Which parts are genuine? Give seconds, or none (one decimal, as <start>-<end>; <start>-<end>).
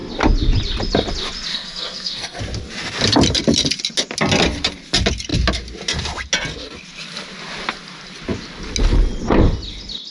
0.0-1.5; 2.4-10.1